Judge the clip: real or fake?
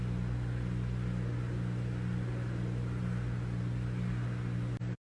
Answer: real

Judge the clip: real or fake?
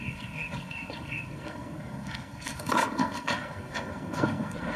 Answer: fake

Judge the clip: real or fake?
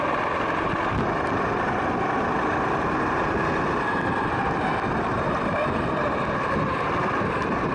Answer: real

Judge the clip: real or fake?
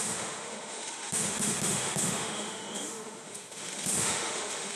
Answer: fake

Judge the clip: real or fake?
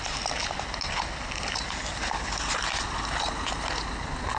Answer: real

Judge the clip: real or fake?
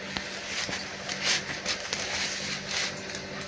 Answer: real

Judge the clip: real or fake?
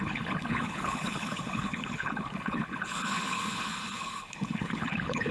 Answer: fake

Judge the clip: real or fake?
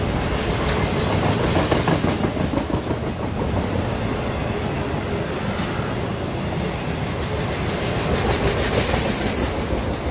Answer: real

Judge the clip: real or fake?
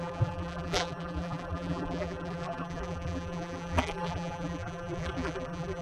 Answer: fake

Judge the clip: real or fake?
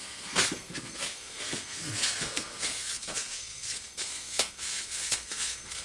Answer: fake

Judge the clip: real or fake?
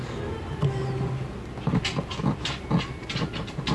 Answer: real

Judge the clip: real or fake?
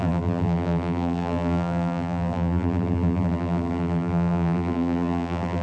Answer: fake